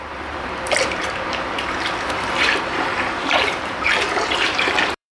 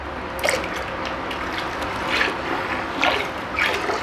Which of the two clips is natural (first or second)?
second